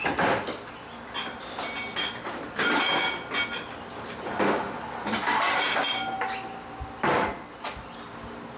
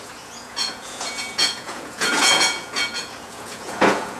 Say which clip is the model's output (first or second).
second